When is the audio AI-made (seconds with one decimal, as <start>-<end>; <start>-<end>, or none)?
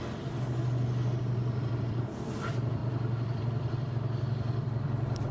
1.2-5.3